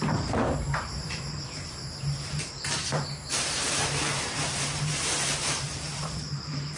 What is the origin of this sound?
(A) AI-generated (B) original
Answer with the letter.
A